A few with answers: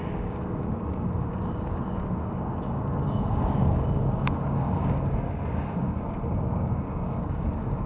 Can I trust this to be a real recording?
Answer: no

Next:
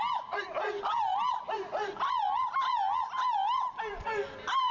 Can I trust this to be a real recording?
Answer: yes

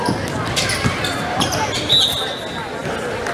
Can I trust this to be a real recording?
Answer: yes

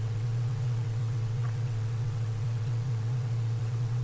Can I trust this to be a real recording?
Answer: no